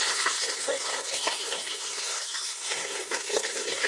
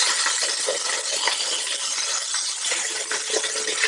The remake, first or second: first